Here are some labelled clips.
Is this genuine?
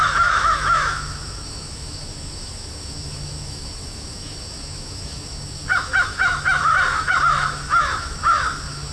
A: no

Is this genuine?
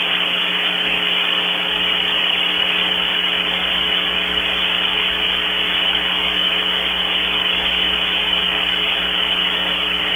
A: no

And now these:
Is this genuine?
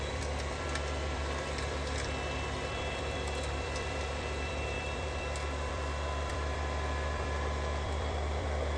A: no